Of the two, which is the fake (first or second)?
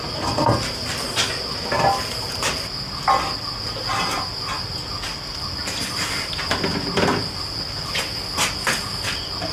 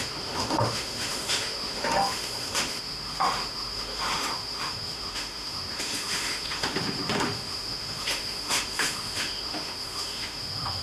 second